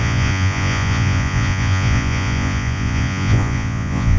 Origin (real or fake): fake